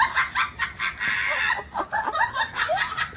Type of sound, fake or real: real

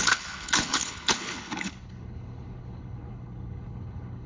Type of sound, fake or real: fake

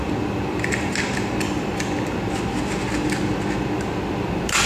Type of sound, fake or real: real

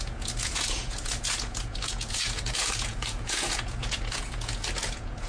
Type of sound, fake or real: fake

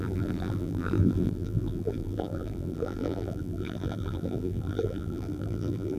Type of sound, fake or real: fake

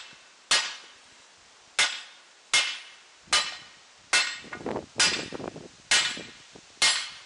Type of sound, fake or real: real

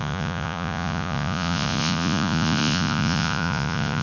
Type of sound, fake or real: fake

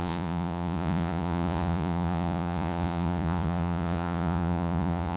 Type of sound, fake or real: fake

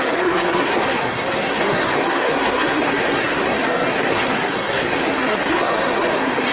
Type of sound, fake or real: fake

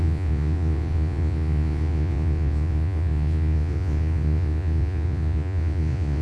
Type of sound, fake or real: fake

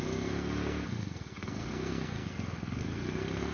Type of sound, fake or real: fake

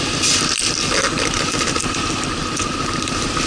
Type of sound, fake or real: real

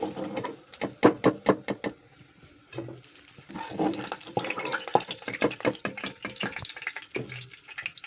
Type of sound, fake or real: real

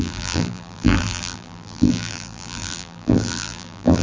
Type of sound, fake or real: fake